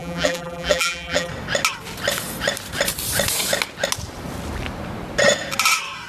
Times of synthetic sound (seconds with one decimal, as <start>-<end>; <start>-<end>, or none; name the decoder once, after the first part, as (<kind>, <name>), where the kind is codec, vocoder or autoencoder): 0.0-1.3 (vocoder, BigVGAN v2)

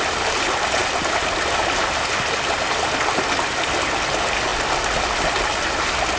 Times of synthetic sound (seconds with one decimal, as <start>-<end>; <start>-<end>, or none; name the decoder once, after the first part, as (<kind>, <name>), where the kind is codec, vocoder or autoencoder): none

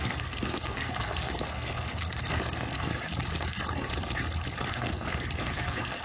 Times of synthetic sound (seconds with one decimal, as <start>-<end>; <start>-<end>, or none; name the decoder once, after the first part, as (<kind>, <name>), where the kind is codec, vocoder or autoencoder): 0.0-2.9 (codec, SNAC); 3.4-3.9; 4.7-6.0

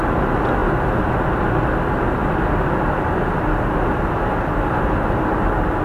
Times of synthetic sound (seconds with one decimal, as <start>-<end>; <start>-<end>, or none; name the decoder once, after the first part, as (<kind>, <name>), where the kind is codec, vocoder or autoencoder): none

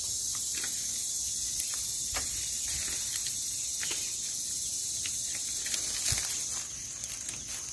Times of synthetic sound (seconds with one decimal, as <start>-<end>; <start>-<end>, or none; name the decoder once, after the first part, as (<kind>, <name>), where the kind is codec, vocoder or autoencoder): none

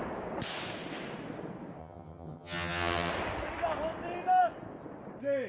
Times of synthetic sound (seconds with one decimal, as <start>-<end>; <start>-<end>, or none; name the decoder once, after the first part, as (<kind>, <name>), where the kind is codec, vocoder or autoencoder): 1.8-3.1 (vocoder, HiFi-GAN)